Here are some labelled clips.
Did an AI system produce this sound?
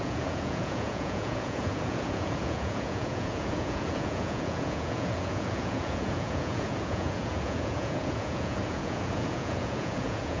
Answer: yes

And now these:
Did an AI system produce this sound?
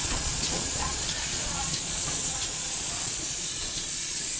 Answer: yes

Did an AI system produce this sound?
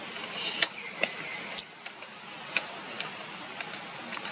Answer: no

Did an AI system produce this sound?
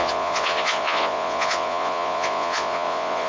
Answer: yes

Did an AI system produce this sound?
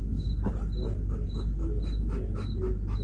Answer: no